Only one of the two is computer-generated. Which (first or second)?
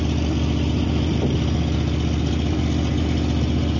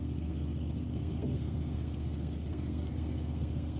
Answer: second